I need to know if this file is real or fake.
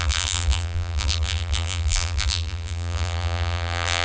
fake